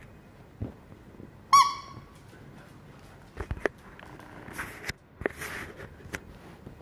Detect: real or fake real